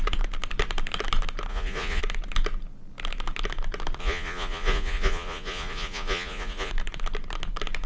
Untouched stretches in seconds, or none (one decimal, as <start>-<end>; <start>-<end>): 0.0-1.5; 2.0-4.0; 6.7-7.9